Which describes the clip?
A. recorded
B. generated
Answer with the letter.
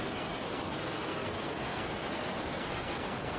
B